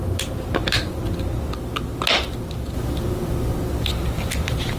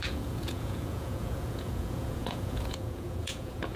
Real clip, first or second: first